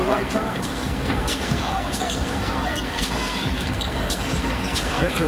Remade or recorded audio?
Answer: remade